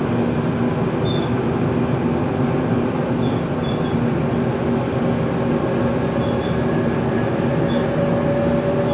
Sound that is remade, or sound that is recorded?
recorded